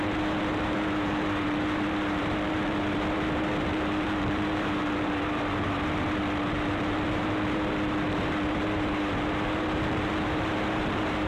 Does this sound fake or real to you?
fake